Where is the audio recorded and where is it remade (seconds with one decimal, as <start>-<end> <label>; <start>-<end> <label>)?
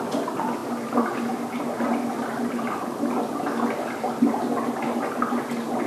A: 0.0-5.9 recorded